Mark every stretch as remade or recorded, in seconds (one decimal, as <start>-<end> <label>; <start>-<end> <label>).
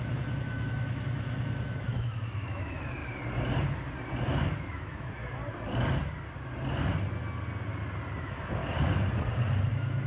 0.0-3.0 remade; 3.0-4.6 recorded; 4.6-5.4 remade; 5.4-8.2 recorded; 8.2-8.6 remade; 8.6-9.7 recorded; 9.7-10.1 remade